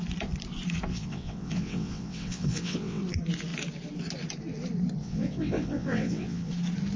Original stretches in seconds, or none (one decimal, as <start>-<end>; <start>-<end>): 0.0-0.9; 3.0-5.0; 6.5-7.0